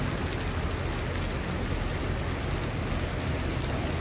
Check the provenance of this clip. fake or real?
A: real